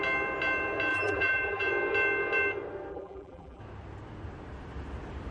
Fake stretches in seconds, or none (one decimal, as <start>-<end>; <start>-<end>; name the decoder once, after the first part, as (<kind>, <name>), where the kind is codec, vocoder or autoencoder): 0.9-1.7 (vocoder, BigVGAN v2); 2.9-3.6